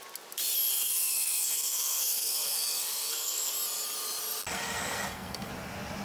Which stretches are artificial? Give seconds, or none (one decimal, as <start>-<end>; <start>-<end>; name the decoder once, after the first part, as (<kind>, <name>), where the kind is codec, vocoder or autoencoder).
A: 0.7-3.5 (codec, SNAC); 4.5-5.5